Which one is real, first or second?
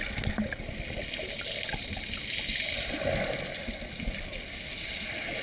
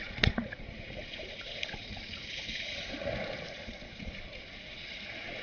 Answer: first